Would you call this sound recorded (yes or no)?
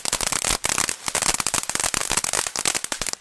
yes